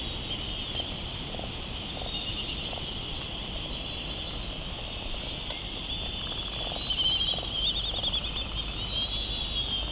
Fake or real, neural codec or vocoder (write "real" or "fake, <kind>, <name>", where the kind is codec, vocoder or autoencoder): real